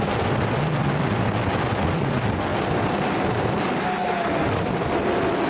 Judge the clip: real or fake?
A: real